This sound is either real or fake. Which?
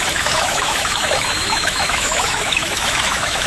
fake